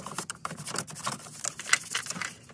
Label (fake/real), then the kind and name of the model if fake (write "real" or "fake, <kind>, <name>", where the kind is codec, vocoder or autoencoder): real